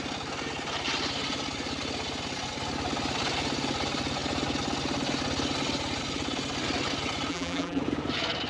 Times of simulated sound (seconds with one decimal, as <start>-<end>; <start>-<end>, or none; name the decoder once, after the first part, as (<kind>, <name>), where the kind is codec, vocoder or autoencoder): 7.3-7.8 (vocoder, BigVGAN v2)